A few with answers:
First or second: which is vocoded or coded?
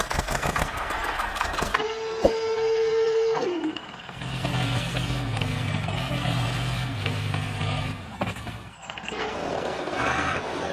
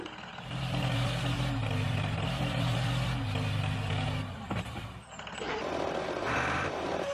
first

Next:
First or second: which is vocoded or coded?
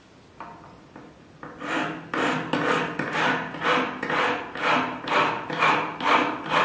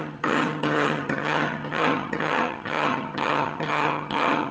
second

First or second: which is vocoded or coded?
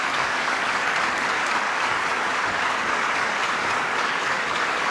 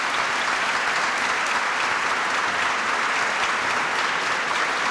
first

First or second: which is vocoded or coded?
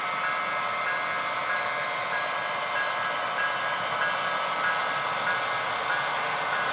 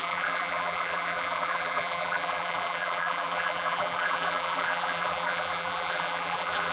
second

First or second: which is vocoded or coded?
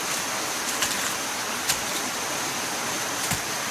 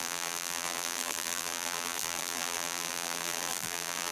second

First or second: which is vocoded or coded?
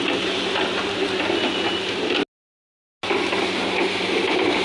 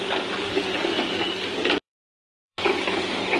second